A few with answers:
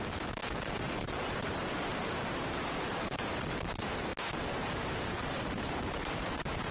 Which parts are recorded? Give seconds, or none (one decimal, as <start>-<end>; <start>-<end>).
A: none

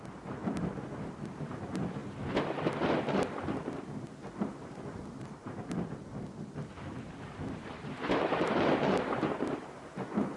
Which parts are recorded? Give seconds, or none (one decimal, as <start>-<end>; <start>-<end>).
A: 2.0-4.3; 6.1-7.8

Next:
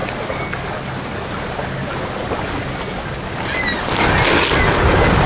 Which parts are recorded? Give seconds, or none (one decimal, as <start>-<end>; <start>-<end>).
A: 0.0-5.3